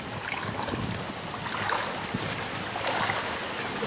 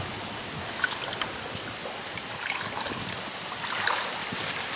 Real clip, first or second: first